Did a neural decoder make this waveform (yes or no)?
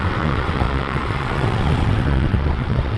yes